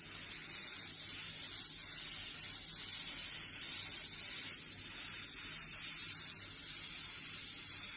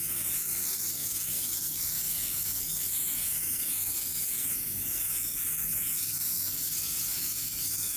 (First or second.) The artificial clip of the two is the second